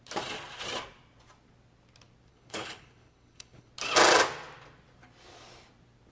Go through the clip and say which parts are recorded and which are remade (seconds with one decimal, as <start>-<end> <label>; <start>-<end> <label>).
0.0-2.3 recorded; 2.3-3.7 remade; 3.7-6.1 recorded